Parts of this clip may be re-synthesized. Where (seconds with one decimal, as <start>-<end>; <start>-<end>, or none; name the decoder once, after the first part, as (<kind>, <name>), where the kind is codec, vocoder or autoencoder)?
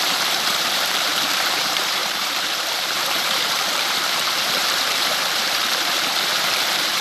0.0-7.0 (vocoder, BigVGAN v2)